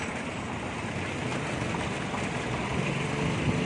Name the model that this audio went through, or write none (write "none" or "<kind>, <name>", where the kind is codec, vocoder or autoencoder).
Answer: none